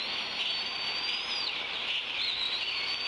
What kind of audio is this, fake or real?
real